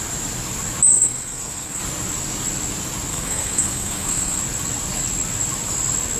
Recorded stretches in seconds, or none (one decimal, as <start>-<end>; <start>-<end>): 0.0-0.9; 1.8-3.1; 4.4-6.2